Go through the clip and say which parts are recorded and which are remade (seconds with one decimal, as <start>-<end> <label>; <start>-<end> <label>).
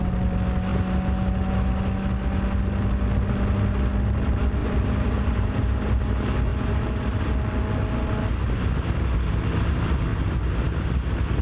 0.0-4.6 recorded; 4.6-6.0 remade; 6.0-6.5 recorded; 6.5-7.2 remade; 7.2-10.1 recorded; 10.1-10.9 remade; 10.9-11.4 recorded